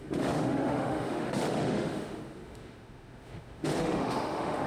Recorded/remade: remade